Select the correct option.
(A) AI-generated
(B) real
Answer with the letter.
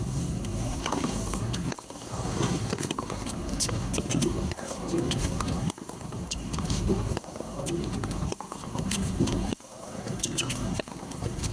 A